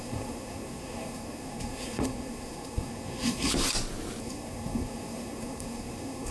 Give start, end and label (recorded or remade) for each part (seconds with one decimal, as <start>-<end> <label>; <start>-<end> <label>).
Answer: 0.0-3.5 remade; 3.5-4.2 recorded; 4.2-6.3 remade